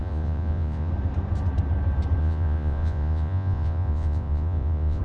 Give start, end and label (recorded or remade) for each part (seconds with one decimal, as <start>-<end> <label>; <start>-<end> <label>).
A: 0.0-0.9 remade; 0.9-2.2 recorded; 2.2-5.0 remade